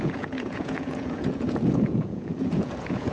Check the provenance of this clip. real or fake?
fake